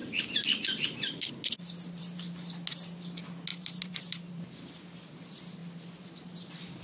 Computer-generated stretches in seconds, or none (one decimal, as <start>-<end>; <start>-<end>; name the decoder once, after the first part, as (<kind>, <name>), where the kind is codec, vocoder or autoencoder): 3.5-4.4 (vocoder, BigVGAN v2)

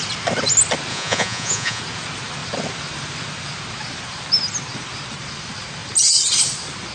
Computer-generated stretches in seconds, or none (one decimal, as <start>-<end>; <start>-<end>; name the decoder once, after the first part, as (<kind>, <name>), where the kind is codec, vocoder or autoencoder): 0.9-1.8 (vocoder, Vocos)

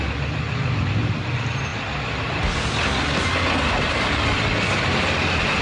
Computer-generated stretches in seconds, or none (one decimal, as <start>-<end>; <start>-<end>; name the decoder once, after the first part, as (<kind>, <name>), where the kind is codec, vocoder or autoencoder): none

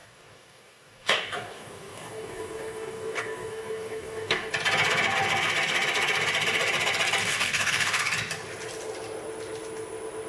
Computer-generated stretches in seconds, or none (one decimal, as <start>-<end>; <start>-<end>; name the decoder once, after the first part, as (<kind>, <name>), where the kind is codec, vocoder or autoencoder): 0.0-4.5 (codec, DAC); 7.2-8.1

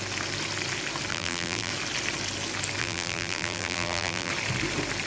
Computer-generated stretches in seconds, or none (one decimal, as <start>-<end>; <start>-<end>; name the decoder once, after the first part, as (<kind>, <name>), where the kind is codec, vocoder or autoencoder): 1.1-1.7 (vocoder, BigVGAN v2); 2.8-4.3

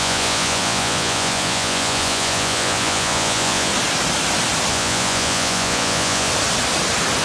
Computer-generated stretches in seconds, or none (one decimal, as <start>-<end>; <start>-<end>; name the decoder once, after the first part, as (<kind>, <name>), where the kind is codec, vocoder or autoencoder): 0.0-3.7 (vocoder, Vocos); 4.7-6.3

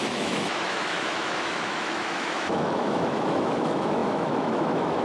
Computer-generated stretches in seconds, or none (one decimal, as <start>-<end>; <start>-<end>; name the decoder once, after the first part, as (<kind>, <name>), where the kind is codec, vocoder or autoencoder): 0.0-5.0 (autoencoder, DAC-VAE)